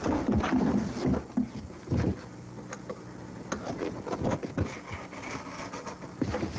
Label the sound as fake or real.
real